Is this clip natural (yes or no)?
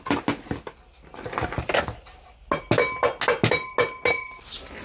yes